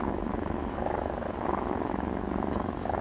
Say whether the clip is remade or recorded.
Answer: remade